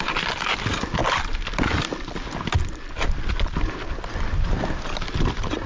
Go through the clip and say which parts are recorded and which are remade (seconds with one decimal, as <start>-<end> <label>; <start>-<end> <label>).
0.0-5.7 recorded